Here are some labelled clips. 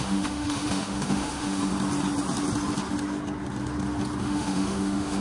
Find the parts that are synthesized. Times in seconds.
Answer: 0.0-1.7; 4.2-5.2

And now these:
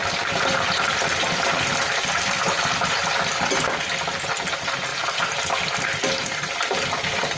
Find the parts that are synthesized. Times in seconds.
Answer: 4.9-5.4

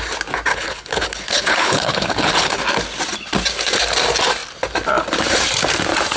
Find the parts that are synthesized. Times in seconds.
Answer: 0.5-2.6

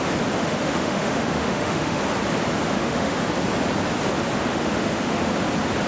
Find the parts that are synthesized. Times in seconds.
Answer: 0.4-2.0; 2.7-3.2; 4.5-5.3

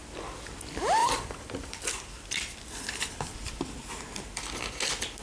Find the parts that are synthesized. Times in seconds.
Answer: 1.0-3.7

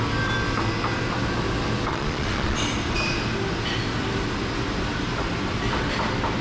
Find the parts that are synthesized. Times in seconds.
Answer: 1.9-2.6

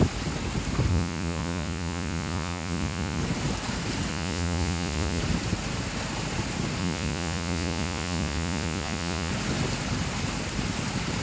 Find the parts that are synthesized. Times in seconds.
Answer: 0.9-3.2; 4.1-5.2; 6.8-9.3

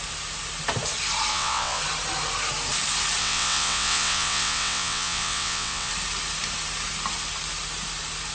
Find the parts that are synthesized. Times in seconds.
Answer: 1.3-1.8; 3.2-5.9